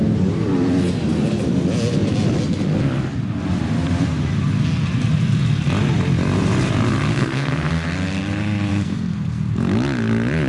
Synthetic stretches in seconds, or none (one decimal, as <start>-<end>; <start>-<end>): 7.1-7.7; 8.7-9.4